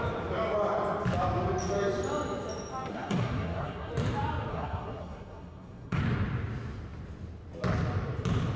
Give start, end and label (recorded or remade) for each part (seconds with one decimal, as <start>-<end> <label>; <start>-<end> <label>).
0.0-2.9 recorded; 2.9-3.9 remade; 3.9-4.5 recorded; 4.5-6.0 remade; 6.0-8.6 recorded